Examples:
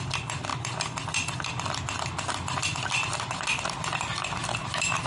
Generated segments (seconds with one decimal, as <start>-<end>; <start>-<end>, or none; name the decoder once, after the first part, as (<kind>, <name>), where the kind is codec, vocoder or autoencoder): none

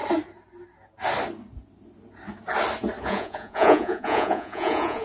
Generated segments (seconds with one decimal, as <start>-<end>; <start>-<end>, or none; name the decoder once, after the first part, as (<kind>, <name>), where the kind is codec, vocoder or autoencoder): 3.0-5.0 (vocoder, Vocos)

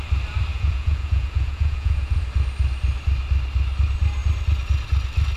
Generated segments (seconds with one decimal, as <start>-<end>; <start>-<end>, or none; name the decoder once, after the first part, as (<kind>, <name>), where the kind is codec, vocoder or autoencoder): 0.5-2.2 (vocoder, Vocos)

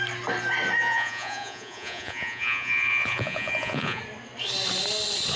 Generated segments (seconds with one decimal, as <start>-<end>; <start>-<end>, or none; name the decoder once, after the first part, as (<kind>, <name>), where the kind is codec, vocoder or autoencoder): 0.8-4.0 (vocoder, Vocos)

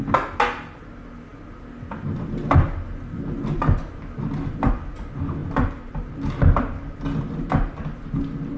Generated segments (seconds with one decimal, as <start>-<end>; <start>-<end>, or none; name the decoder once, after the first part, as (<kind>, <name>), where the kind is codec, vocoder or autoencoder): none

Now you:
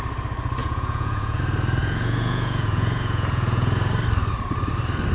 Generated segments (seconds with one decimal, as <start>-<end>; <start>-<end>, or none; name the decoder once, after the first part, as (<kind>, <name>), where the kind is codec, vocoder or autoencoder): 0.6-1.4 (vocoder, Vocos); 1.8-3.9

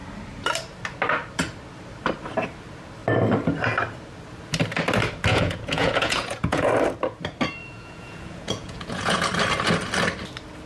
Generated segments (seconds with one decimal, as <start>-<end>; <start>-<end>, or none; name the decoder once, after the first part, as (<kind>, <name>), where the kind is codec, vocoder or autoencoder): 5.3-6.7 (vocoder, Vocos); 7.6-9.2